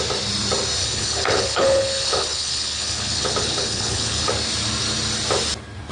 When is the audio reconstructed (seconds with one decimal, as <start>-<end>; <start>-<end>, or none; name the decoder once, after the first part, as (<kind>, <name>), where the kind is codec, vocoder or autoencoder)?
0.8-4.3 (codec, HILCodec)